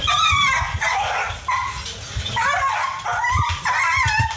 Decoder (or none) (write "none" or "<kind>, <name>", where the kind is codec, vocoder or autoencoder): none